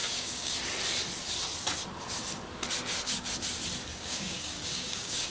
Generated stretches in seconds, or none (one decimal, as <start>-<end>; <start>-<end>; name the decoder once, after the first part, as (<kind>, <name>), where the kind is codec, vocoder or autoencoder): 0.0-0.5 (codec, DAC); 3.9-5.3